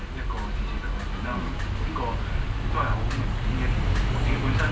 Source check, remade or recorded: recorded